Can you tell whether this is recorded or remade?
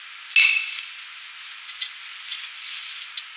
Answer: recorded